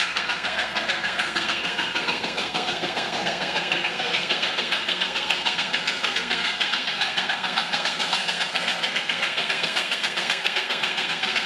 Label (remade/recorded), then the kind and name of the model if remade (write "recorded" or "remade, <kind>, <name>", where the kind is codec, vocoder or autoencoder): remade, codec, SNAC